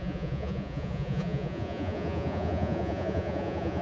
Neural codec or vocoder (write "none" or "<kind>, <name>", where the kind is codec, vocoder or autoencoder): vocoder, Vocos